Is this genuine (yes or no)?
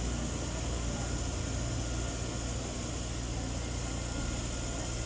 yes